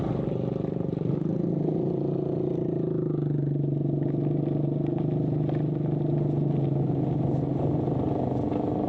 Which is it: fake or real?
real